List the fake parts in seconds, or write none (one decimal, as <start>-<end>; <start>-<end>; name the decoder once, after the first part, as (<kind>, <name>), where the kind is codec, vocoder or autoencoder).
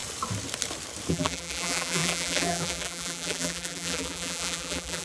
1.1-5.0 (vocoder, BigVGAN v2)